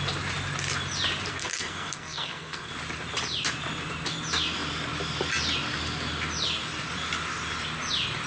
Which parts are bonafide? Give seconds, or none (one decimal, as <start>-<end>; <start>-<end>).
0.0-1.3; 2.7-8.3